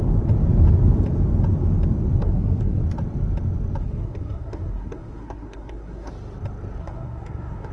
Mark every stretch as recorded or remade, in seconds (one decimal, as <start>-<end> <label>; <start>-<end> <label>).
0.0-2.2 recorded; 2.2-2.8 remade; 2.8-3.8 recorded; 3.8-6.1 remade; 6.1-6.8 recorded; 6.8-7.7 remade